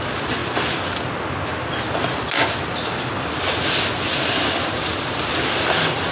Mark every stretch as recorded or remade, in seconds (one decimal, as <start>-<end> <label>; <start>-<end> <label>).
0.0-0.4 remade; 0.4-3.7 recorded; 3.7-4.9 remade; 4.9-5.6 recorded; 5.6-6.1 remade